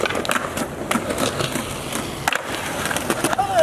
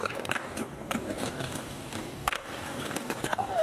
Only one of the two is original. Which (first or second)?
first